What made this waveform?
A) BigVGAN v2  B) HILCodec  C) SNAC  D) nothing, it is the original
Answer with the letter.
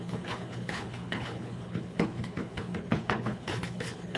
B